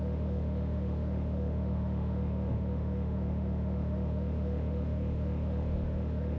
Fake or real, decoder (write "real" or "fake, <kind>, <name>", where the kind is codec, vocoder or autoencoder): fake, autoencoder, DAC-VAE